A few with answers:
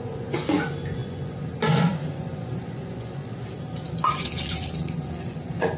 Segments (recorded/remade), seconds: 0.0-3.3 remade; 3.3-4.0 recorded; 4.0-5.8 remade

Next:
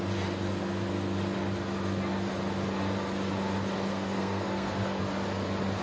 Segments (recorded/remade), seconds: 0.0-3.9 recorded; 3.9-5.0 remade; 5.0-5.8 recorded

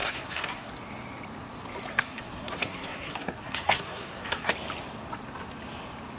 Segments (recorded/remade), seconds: 0.0-0.7 remade; 0.7-1.9 recorded; 1.9-4.5 remade; 4.5-6.2 recorded

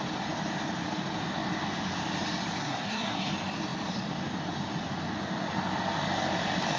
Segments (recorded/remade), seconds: 0.0-2.6 recorded; 2.6-3.3 remade; 3.3-6.8 recorded

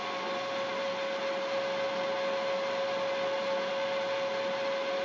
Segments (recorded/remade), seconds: 0.0-5.0 recorded